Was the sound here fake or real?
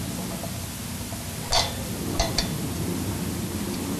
real